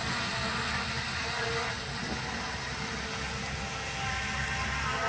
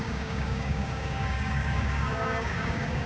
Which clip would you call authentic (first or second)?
first